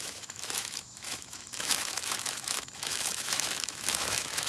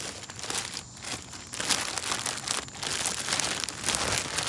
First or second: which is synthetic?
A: first